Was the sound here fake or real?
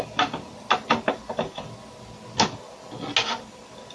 real